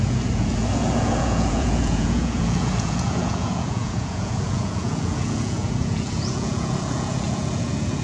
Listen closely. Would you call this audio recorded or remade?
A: remade